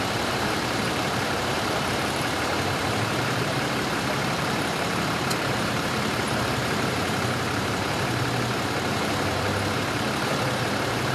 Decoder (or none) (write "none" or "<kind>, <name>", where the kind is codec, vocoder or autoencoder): vocoder, BigVGAN v2